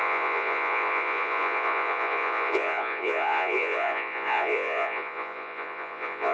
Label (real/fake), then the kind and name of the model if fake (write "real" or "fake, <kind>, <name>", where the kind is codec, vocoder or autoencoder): fake, vocoder, Vocos